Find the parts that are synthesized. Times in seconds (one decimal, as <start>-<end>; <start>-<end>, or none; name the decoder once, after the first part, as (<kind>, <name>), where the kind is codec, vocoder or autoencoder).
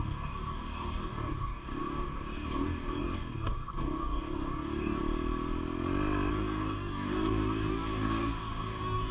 0.0-5.0 (codec, DAC); 6.3-9.1